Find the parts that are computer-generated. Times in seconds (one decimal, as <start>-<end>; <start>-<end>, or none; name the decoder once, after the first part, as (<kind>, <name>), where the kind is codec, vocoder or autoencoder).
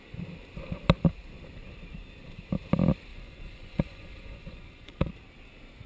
3.1-5.1 (vocoder, Vocos)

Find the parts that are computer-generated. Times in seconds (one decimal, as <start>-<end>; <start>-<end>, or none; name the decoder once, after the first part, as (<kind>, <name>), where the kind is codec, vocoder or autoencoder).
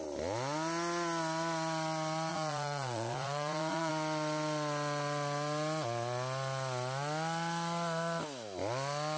2.3-3.9 (vocoder, Vocos)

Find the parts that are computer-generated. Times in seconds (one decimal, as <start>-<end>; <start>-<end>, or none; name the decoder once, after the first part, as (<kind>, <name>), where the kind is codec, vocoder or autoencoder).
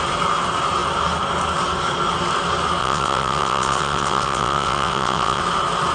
2.8-5.4 (vocoder, WaveNeXt)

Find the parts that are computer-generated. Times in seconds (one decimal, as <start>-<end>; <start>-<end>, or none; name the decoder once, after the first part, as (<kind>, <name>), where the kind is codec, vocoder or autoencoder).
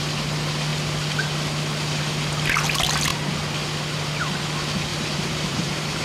4.9-6.0 (vocoder, BigVGAN v2)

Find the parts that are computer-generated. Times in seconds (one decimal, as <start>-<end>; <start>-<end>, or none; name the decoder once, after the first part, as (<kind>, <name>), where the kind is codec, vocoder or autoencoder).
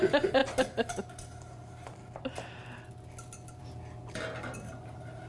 none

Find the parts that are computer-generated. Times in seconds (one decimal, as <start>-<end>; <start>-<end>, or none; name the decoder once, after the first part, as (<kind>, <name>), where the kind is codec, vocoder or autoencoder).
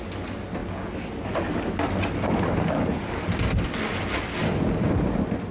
none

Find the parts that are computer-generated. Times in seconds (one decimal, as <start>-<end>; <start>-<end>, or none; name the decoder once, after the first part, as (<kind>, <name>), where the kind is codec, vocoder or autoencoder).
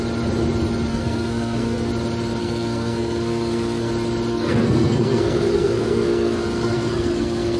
0.9-1.9 (codec, SNAC); 2.4-3.9; 4.3-7.6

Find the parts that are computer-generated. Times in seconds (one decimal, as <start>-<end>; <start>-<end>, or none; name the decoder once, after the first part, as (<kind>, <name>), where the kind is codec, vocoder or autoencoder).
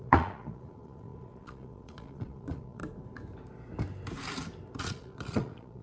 0.0-2.8 (vocoder, Vocos); 4.8-5.8